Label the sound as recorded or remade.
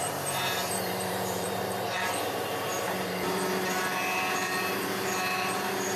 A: remade